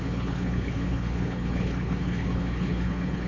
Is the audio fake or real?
fake